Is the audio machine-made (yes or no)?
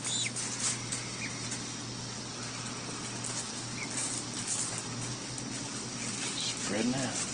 no